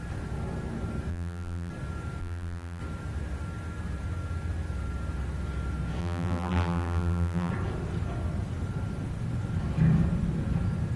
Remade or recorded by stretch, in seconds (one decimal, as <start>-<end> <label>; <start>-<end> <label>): 0.0-1.1 recorded; 1.1-1.7 remade; 1.7-2.2 recorded; 2.2-2.8 remade; 2.8-6.0 recorded; 6.0-7.5 remade; 7.5-11.0 recorded